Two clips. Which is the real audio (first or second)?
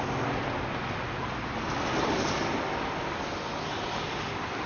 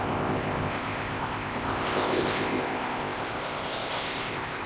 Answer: first